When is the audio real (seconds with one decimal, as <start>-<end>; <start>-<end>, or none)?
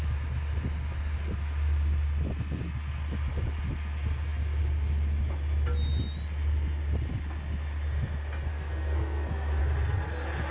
0.0-8.5; 9.6-10.5